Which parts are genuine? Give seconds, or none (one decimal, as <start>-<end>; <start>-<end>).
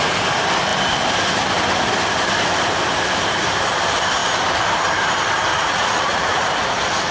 0.0-5.5; 6.5-7.1